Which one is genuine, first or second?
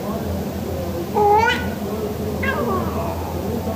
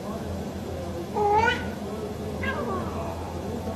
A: first